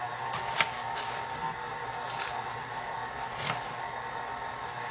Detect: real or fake real